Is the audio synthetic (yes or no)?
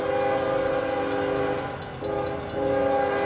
no